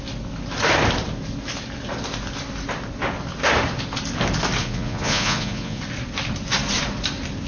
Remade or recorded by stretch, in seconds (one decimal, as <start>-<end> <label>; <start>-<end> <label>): 0.0-4.6 recorded; 4.6-5.8 remade; 5.8-7.5 recorded